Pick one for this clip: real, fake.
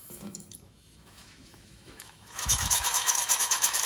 fake